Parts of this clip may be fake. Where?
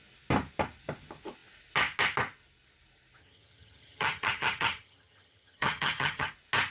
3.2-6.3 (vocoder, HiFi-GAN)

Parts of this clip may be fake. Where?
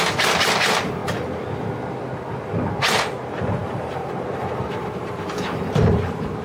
0.0-1.0 (vocoder, BigVGAN v2); 2.8-6.4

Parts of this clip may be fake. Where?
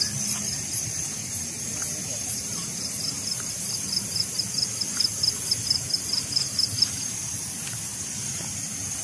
none